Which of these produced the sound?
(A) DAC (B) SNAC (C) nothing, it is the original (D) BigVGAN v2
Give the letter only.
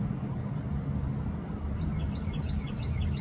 C